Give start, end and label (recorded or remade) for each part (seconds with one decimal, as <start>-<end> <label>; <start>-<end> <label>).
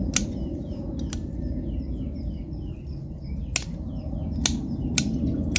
0.0-5.6 recorded